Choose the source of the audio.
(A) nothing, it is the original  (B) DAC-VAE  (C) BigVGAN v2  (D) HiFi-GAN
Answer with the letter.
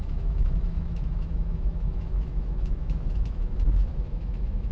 B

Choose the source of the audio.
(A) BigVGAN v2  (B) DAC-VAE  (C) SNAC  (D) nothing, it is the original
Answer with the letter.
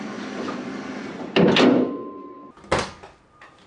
D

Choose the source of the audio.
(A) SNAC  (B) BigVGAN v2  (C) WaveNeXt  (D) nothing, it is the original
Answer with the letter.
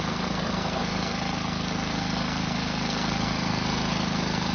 A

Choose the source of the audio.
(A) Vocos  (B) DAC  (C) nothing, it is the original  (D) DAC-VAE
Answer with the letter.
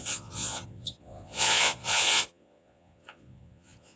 A